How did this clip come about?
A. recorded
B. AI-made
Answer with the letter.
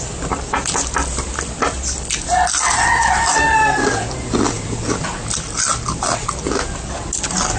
A